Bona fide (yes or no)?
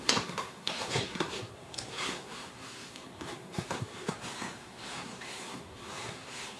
no